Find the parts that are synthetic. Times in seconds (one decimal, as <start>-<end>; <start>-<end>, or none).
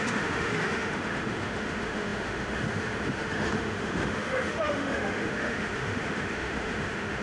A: 0.0-7.2